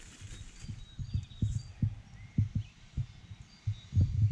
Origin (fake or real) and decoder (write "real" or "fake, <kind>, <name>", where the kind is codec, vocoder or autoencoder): real